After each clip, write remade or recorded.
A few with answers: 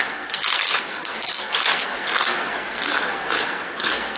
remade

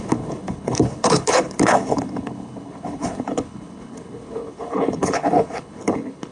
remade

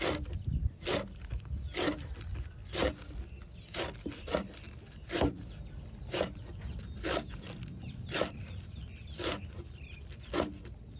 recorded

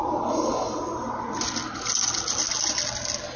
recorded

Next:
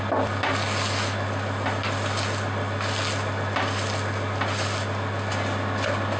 recorded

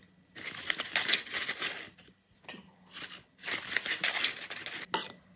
recorded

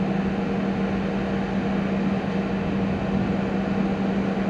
recorded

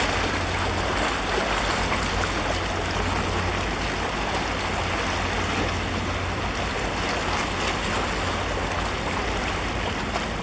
recorded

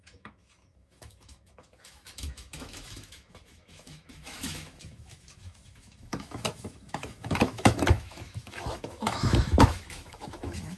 remade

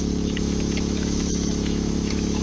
remade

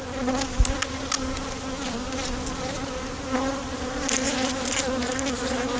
recorded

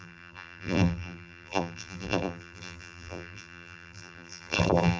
remade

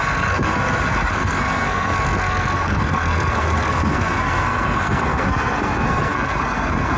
remade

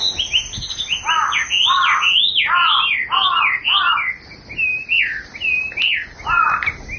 recorded